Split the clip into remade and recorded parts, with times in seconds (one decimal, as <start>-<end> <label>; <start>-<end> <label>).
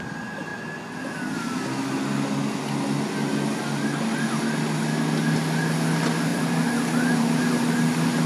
0.0-6.3 recorded; 6.3-7.4 remade; 7.4-8.3 recorded